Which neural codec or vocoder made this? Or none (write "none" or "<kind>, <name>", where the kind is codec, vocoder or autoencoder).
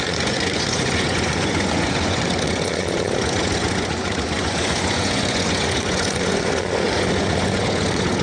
vocoder, Vocos